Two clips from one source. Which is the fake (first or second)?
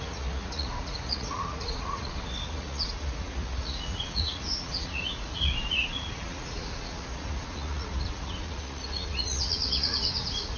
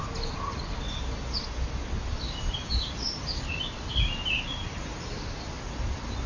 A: first